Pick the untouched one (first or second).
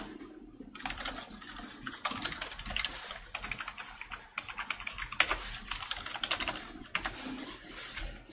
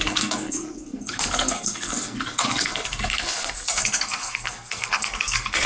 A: first